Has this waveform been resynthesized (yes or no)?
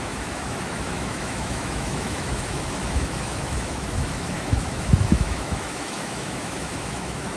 yes